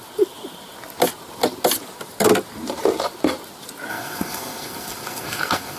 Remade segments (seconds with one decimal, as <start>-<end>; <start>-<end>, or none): 3.9-5.8